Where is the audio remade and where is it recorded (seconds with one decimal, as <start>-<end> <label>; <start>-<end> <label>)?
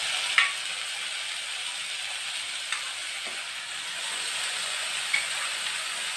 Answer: 0.0-3.0 recorded; 3.0-6.2 remade